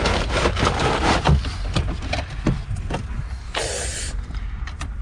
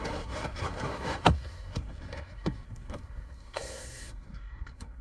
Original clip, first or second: first